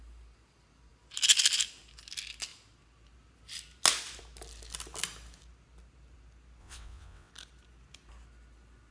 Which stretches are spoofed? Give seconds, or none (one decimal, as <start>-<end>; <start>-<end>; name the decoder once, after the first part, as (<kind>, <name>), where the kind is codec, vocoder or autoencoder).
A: 6.6-7.3 (vocoder, WaveNeXt)